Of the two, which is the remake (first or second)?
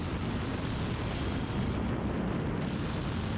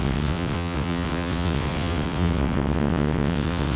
second